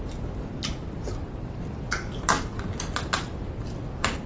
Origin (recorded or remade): recorded